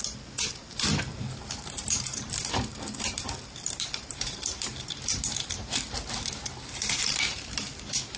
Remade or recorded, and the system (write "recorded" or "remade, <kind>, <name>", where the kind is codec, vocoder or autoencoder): remade, vocoder, BigVGAN v2